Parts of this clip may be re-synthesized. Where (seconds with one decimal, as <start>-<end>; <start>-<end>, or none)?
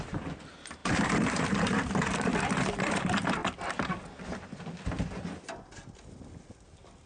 0.0-3.4